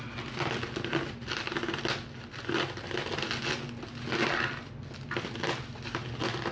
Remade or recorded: recorded